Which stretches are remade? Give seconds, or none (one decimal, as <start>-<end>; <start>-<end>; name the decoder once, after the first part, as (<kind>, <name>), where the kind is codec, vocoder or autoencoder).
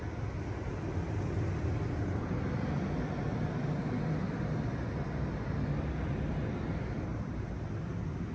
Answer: 7.1-7.7 (vocoder, BigVGAN v2)